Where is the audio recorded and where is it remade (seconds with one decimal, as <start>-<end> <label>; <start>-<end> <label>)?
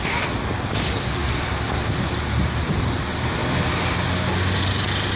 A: 0.0-5.2 recorded